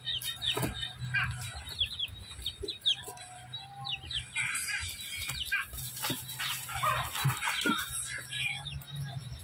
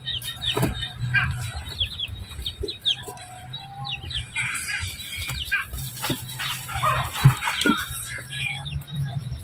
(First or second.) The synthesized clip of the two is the second